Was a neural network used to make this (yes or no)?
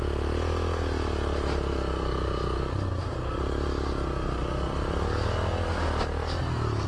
no